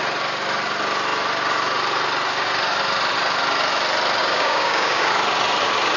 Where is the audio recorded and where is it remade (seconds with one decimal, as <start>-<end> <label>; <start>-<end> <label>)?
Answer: 0.0-4.2 recorded; 4.2-5.1 remade; 5.1-6.0 recorded